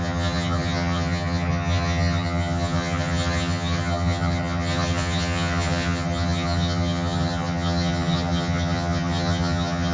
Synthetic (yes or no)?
yes